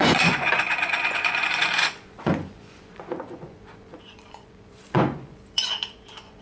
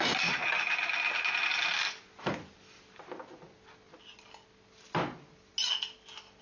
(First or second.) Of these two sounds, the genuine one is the second